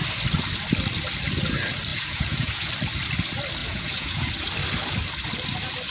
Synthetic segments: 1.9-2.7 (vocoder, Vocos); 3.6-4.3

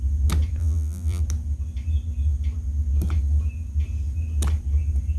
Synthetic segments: 0.6-1.2 (vocoder, BigVGAN v2)

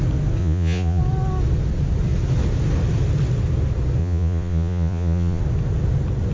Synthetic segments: 0.4-1.0 (vocoder, Vocos); 4.0-5.4